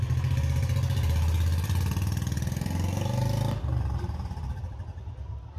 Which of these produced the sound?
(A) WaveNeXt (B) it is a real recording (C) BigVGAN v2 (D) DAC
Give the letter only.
B